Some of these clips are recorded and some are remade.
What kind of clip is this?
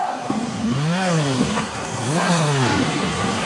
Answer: remade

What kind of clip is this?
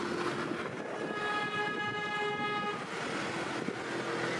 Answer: recorded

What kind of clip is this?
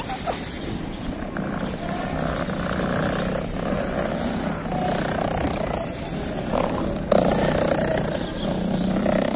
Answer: recorded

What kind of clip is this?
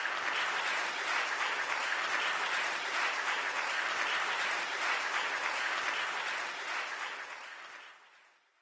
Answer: recorded